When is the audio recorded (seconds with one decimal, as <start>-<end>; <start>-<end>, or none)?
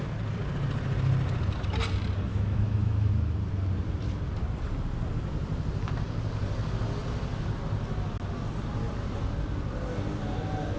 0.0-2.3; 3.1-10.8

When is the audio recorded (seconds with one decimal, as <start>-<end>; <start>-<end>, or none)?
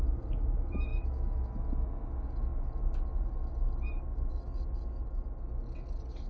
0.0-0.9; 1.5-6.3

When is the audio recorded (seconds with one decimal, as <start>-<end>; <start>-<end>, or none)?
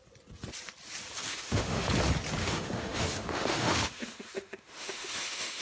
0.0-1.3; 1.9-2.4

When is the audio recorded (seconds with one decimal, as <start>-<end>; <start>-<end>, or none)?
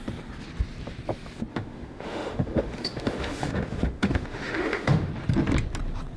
0.0-1.5; 5.1-6.2